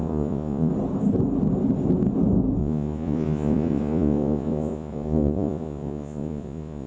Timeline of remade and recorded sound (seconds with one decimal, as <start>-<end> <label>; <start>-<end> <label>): 0.0-0.7 remade; 0.7-2.6 recorded; 2.6-6.9 remade

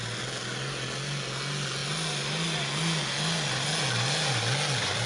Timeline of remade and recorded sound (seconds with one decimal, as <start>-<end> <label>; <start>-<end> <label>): 0.0-5.1 recorded

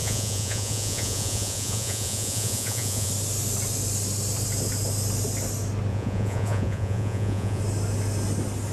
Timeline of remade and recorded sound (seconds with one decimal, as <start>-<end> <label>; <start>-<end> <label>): 0.0-3.1 remade; 3.1-5.9 recorded; 5.9-7.6 remade; 7.6-8.7 recorded

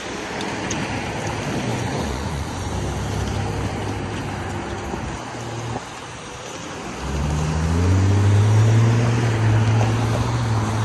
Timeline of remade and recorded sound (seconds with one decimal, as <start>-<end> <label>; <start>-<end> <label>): 0.0-1.7 recorded; 1.7-2.7 remade; 2.7-10.8 recorded

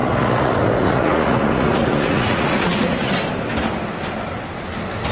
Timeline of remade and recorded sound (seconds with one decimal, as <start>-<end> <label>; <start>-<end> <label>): 0.0-3.1 remade; 3.1-5.1 recorded

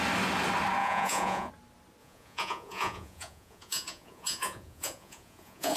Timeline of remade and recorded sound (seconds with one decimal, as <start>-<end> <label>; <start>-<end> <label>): 0.0-0.8 recorded; 0.8-1.5 remade; 1.5-2.0 recorded; 2.0-5.8 remade

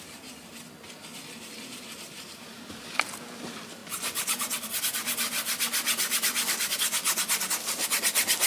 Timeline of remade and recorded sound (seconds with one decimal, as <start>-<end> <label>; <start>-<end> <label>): 0.0-8.5 recorded

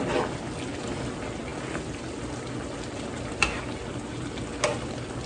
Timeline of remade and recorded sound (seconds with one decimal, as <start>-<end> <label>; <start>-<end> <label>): 0.0-5.3 recorded